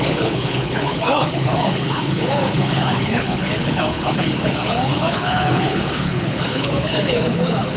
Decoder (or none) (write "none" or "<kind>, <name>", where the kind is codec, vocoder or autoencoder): codec, HILCodec